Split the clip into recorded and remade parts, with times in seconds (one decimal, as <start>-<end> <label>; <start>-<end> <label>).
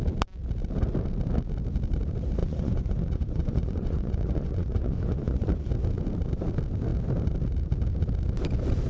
0.0-2.4 recorded; 2.4-5.7 remade; 5.7-8.9 recorded